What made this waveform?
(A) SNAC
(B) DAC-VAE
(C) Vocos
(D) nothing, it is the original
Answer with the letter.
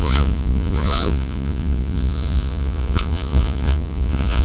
C